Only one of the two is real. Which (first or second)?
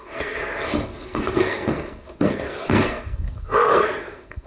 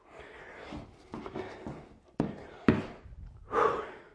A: second